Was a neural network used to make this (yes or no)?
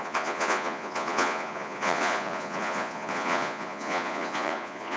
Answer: yes